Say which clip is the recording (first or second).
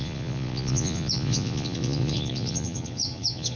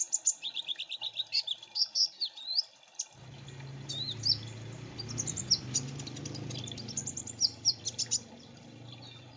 second